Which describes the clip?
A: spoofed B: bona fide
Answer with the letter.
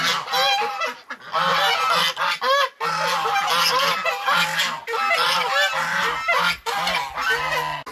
B